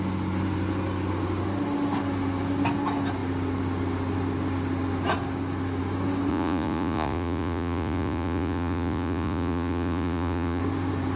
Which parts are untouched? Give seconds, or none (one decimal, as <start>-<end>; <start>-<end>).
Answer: 0.0-6.3; 10.6-11.2